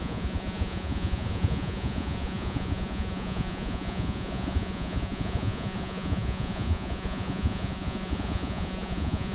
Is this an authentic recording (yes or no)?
no